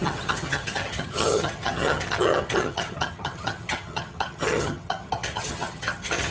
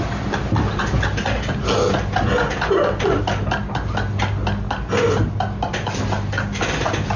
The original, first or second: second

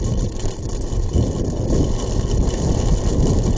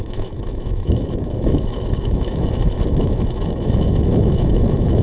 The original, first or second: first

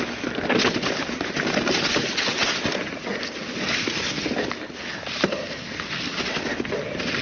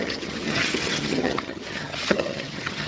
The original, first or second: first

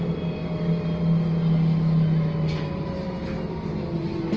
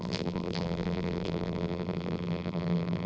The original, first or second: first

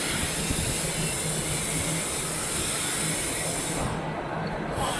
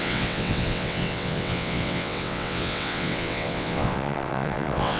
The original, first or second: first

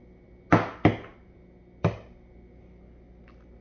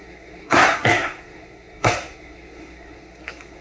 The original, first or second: first